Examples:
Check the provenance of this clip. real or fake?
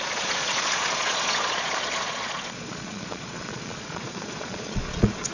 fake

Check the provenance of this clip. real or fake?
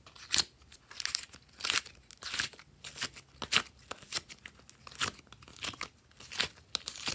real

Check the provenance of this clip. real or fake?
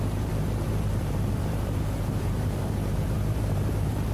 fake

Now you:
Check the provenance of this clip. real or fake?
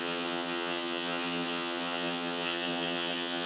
fake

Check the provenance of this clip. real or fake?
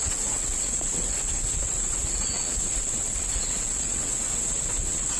fake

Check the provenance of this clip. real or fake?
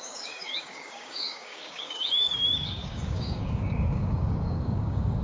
fake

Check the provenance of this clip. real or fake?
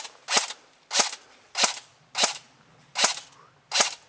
real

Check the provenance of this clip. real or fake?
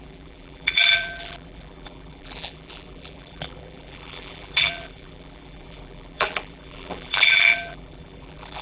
fake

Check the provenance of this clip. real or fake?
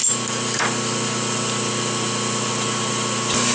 real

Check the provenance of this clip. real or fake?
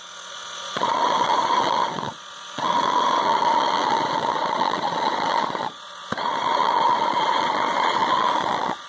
fake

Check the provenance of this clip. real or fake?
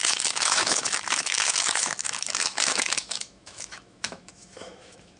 fake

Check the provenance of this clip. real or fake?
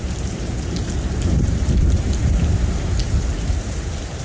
fake